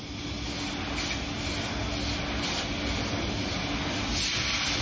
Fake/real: real